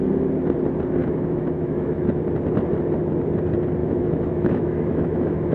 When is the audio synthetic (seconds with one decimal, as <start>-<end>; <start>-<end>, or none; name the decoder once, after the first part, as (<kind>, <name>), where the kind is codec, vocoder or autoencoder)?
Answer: 1.0-2.0 (autoencoder, DAC-VAE); 3.8-5.5